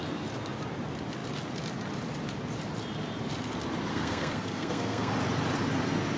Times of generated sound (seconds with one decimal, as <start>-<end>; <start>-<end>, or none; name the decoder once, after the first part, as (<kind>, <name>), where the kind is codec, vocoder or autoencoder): 3.9-5.1 (codec, SNAC)